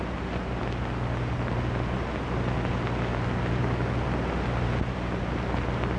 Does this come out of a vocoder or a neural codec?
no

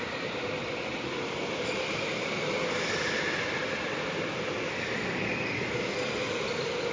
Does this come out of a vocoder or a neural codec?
no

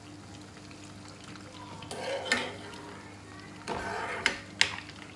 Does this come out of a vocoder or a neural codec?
no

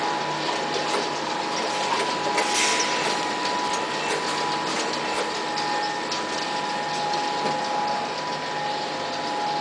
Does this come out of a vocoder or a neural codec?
no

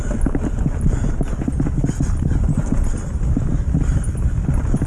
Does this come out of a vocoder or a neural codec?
no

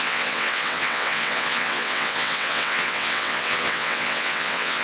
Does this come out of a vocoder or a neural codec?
yes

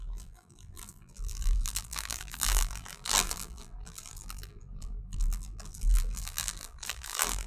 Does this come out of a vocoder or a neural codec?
yes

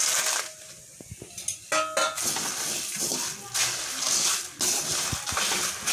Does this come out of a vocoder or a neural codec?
no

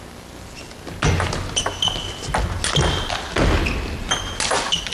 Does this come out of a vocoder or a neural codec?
no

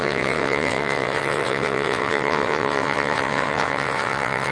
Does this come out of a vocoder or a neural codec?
yes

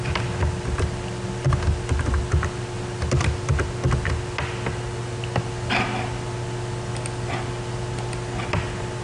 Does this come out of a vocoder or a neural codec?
no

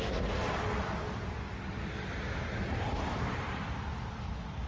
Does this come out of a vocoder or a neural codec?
no